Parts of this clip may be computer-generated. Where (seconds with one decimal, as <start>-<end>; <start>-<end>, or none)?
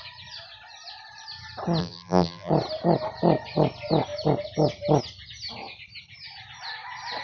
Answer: 1.8-2.5